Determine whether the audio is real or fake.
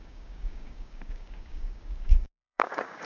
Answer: fake